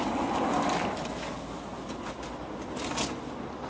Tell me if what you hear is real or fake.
real